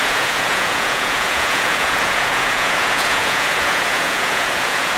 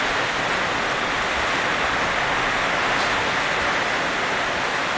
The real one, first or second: second